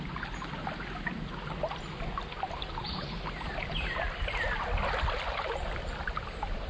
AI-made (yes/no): no